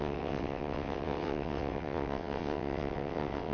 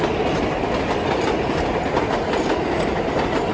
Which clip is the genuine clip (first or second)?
second